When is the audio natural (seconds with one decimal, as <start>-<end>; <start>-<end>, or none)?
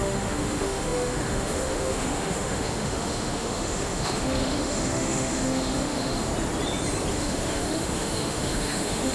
6.3-7.1